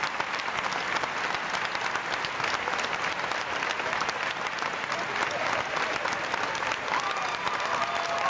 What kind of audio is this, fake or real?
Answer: real